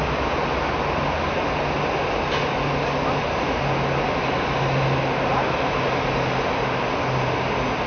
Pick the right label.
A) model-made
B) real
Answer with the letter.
B